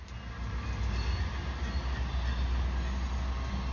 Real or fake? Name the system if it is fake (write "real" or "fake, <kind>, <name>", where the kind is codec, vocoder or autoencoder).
real